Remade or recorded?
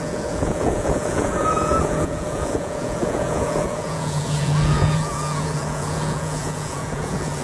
remade